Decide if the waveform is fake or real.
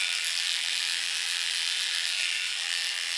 fake